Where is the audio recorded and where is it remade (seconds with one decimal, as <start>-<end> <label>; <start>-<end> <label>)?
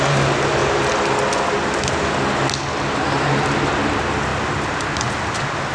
0.0-5.7 recorded